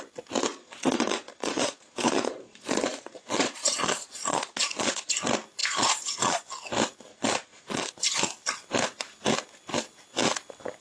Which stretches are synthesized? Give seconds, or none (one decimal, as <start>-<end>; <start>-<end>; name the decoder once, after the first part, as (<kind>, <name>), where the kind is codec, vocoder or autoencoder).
0.5-5.1 (vocoder, Vocos); 5.6-6.4; 7.1-7.9